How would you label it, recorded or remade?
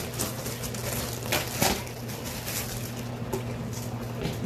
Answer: recorded